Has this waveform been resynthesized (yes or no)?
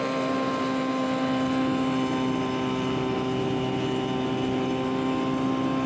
no